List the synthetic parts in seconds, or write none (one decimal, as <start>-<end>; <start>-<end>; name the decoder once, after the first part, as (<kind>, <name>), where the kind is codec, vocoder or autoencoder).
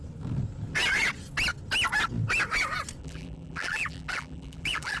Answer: 3.0-5.0 (vocoder, BigVGAN v2)